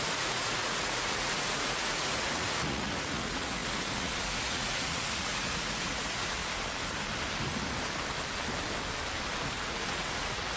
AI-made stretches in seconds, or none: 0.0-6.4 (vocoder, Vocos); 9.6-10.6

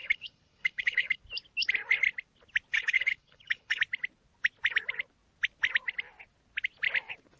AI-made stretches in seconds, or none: 0.0-1.2 (codec, HILCodec); 2.7-3.8